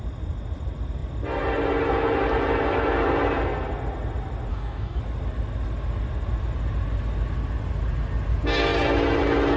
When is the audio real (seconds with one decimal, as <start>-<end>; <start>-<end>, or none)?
0.0-4.5; 5.0-9.6